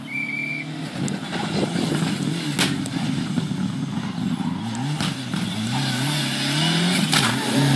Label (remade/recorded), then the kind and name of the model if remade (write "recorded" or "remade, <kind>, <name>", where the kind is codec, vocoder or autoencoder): recorded